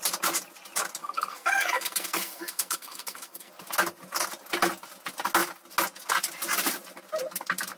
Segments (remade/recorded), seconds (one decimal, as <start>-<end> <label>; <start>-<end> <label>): 0.0-1.0 recorded; 1.0-3.5 remade; 3.5-7.8 recorded

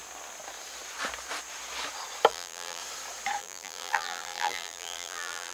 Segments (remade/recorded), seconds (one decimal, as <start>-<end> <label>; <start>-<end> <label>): 0.0-2.3 recorded; 2.3-2.8 remade; 2.8-3.4 recorded; 3.4-5.5 remade

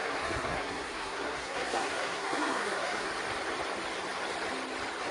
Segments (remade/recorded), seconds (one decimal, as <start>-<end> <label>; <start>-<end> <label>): 0.0-3.1 remade; 3.1-5.1 recorded

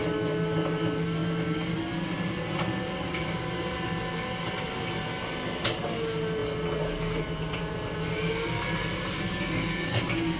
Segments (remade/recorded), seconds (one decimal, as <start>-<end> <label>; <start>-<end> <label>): 0.0-9.3 recorded; 9.3-10.0 remade; 10.0-10.4 recorded

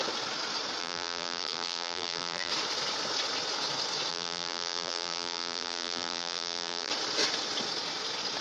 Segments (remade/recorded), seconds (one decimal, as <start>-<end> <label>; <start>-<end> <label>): 0.0-0.8 recorded; 0.8-2.5 remade; 2.5-4.1 recorded; 4.1-6.9 remade; 6.9-8.4 recorded

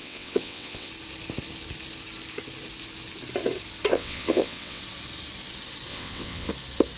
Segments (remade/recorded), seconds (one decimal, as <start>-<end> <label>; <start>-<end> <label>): 0.0-0.9 remade; 0.9-3.9 recorded; 3.9-4.8 remade; 4.8-5.9 recorded; 5.9-6.5 remade; 6.5-7.0 recorded

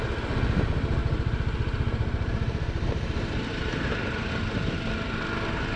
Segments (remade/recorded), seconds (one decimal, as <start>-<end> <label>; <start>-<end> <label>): 0.0-1.0 recorded; 1.0-4.3 remade; 4.3-5.8 recorded

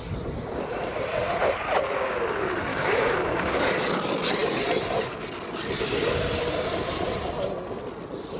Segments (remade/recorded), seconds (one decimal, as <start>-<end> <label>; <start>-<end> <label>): 0.0-2.7 recorded; 2.7-3.6 remade; 3.6-8.4 recorded